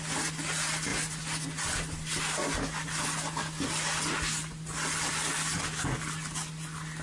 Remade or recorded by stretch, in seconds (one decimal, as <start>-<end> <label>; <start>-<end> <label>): 0.0-7.0 recorded